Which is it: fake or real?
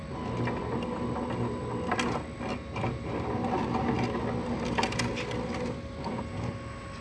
real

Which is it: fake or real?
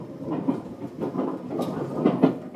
real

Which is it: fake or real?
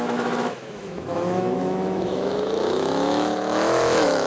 fake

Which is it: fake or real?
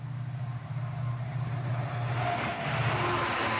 real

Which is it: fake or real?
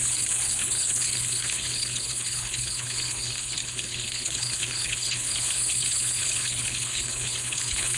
fake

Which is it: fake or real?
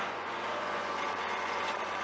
fake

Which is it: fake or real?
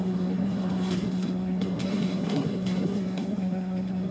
fake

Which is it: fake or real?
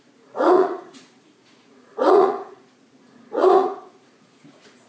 fake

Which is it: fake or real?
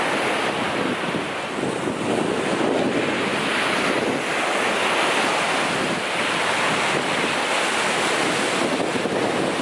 real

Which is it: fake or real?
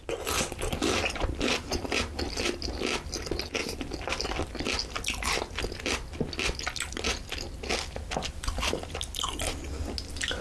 real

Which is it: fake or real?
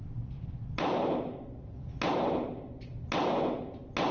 real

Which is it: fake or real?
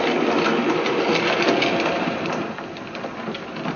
real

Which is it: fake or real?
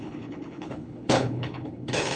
fake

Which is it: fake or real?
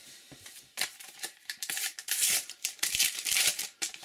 fake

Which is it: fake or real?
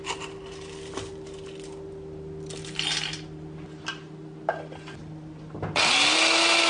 real